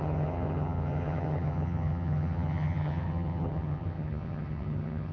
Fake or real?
fake